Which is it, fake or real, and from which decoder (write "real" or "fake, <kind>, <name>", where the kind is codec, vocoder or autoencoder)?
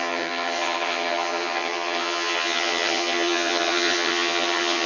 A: fake, vocoder, HiFi-GAN